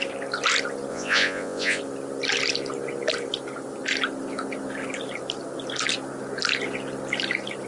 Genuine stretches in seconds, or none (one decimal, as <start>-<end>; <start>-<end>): 0.0-0.9; 1.8-7.7